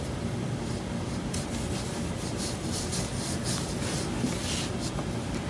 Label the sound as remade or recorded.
recorded